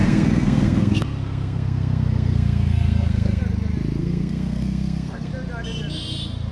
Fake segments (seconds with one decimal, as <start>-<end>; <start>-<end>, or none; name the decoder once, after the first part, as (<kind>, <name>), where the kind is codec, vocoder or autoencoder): 0.0-3.4 (codec, SNAC); 4.0-5.3